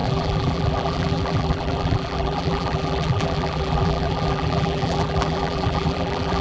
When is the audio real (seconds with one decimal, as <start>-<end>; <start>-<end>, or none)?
none